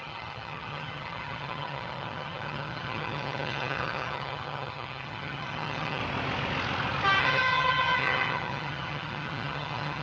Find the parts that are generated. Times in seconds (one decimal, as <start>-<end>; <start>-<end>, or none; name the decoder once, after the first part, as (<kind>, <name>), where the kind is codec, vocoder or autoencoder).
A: 0.0-6.0 (vocoder, HiFi-GAN); 7.2-10.0